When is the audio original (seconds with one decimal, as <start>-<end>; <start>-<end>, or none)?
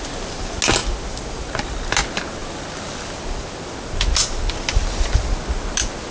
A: 0.0-6.1